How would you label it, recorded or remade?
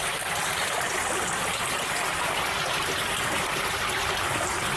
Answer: recorded